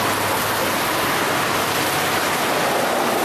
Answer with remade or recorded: recorded